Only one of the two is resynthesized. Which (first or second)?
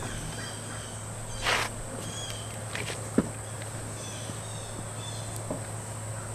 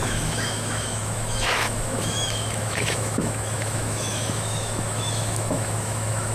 second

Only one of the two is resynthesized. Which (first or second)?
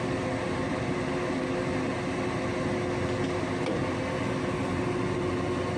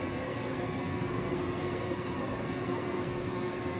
second